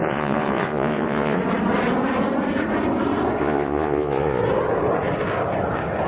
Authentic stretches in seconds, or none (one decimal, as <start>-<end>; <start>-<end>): 1.4-3.4; 4.4-6.1

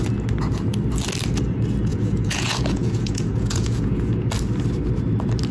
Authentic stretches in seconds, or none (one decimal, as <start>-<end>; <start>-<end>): 0.0-1.9; 4.3-5.5

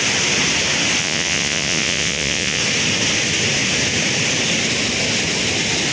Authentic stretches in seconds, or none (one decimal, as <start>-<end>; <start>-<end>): 0.0-1.0; 2.6-5.9

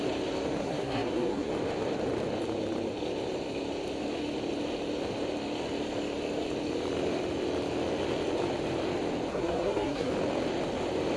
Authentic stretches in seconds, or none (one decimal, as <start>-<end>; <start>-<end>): 0.0-0.6; 1.5-9.3; 10.1-11.2

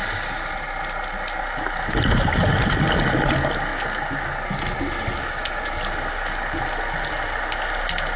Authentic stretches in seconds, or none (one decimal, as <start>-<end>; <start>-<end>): 0.0-8.2

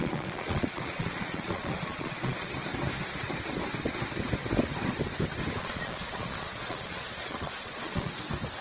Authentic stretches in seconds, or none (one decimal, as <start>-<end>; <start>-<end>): 2.5-5.6; 8.2-8.6